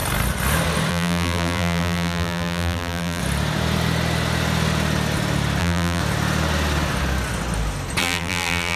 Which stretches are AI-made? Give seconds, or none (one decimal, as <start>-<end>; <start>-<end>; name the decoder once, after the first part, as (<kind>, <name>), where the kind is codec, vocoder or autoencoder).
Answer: 0.9-3.2 (vocoder, BigVGAN v2); 5.6-6.0; 8.0-8.8